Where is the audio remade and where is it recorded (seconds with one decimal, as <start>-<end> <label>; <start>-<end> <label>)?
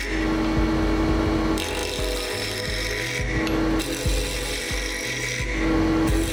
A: 0.0-6.3 recorded